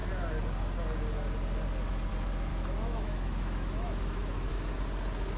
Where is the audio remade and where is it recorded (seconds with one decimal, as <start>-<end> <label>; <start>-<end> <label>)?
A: 0.0-2.5 recorded; 2.5-4.5 remade; 4.5-5.4 recorded